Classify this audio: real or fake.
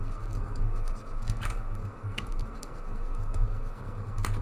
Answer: fake